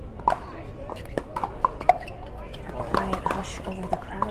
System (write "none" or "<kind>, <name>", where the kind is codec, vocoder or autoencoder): none